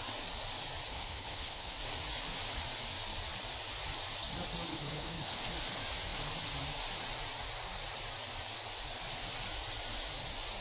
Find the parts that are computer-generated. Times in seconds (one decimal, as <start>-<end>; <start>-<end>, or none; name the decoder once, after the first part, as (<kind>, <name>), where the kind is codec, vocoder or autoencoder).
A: 0.9-1.7 (codec, HILCodec); 4.7-5.5